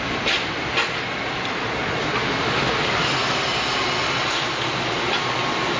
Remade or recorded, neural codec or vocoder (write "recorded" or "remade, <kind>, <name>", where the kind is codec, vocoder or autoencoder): recorded